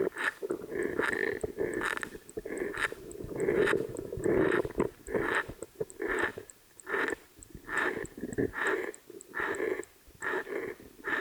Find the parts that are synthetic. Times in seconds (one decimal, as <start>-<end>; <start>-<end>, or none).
6.3-8.9